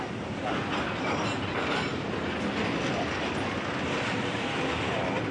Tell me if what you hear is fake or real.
real